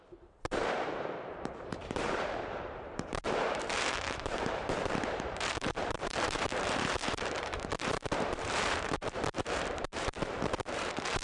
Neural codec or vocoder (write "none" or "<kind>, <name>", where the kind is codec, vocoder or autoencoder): vocoder, BigVGAN v2